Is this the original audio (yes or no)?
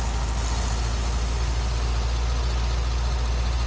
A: yes